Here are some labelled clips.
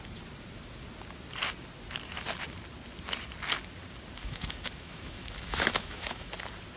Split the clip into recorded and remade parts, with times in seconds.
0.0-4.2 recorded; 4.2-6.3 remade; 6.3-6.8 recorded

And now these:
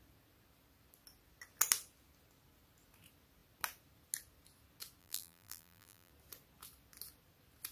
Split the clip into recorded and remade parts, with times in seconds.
0.0-5.0 recorded; 5.0-6.1 remade; 6.1-7.7 recorded

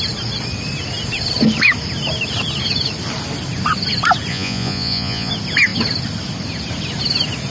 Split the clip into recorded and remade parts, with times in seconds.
0.0-4.3 recorded; 4.3-5.3 remade; 5.3-7.5 recorded

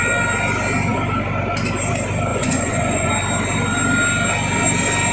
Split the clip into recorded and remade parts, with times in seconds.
0.0-2.3 recorded; 2.3-3.1 remade; 3.1-5.1 recorded

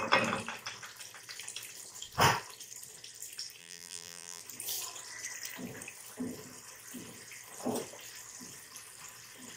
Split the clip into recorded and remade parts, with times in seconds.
0.0-3.6 recorded; 3.6-4.4 remade; 4.4-9.6 recorded

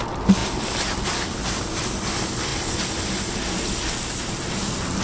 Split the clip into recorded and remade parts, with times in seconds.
0.0-5.0 recorded

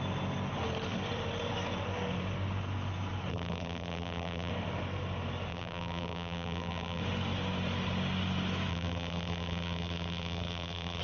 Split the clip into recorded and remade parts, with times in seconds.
0.0-3.3 recorded; 3.3-4.5 remade; 4.5-5.5 recorded; 5.5-7.0 remade; 7.0-8.7 recorded; 8.7-11.0 remade